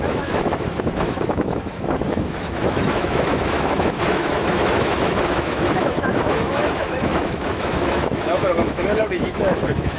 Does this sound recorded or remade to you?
remade